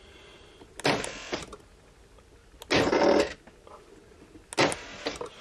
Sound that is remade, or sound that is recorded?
recorded